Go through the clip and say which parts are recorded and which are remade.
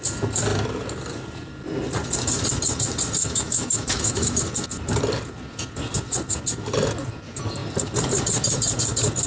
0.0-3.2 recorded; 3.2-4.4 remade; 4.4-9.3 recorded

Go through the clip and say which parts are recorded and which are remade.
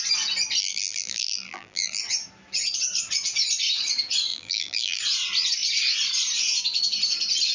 0.0-0.6 recorded; 0.6-2.0 remade; 2.0-4.3 recorded; 4.3-5.0 remade; 5.0-7.5 recorded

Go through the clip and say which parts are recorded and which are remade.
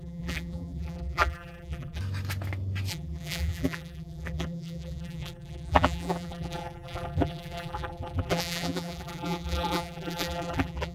0.0-2.0 remade; 2.0-2.9 recorded; 2.9-10.9 remade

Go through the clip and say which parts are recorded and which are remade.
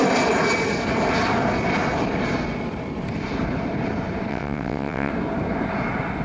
0.0-4.3 recorded; 4.3-5.1 remade; 5.1-6.2 recorded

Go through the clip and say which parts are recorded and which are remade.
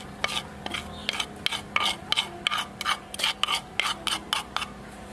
0.0-5.1 recorded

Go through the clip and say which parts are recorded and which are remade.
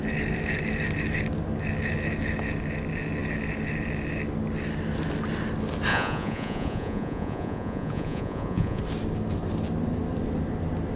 0.0-5.9 recorded; 5.9-8.8 remade; 8.8-11.0 recorded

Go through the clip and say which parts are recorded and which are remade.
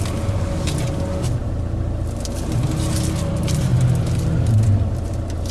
0.0-5.5 recorded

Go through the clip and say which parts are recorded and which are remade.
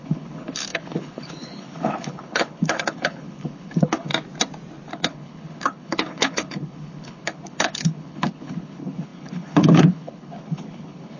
0.0-4.1 remade; 4.1-4.9 recorded; 4.9-11.2 remade